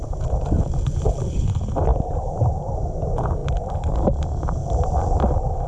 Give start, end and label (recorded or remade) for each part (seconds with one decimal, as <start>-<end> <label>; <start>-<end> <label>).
0.0-1.9 recorded; 1.9-2.7 remade; 2.7-4.6 recorded; 4.6-5.2 remade; 5.2-5.7 recorded